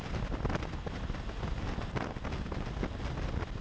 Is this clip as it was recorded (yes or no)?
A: yes